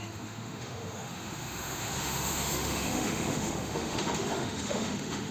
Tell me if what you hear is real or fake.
fake